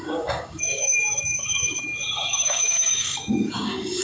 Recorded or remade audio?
remade